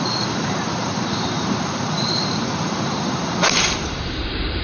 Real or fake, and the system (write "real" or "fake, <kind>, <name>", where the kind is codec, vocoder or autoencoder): fake, vocoder, BigVGAN v2